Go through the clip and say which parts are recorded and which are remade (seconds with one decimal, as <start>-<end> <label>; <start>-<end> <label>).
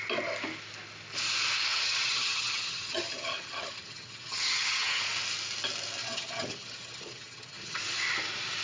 0.0-1.7 recorded; 1.7-5.0 remade; 5.0-6.0 recorded; 6.0-7.8 remade; 7.8-8.6 recorded